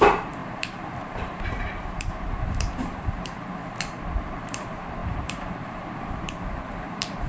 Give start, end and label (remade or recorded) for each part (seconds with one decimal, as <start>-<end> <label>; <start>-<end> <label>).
0.0-3.6 remade; 3.6-4.2 recorded; 4.2-7.3 remade